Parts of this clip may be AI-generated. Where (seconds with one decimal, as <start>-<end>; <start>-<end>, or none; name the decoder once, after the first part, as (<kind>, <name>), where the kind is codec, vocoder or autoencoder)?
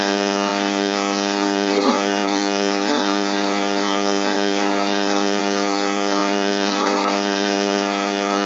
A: 0.0-8.5 (codec, SNAC)